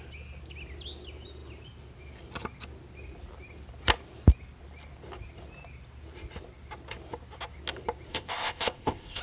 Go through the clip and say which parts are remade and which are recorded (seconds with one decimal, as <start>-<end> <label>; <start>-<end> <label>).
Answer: 0.0-8.1 recorded; 8.1-9.2 remade